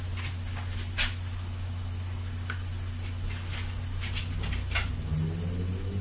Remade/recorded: recorded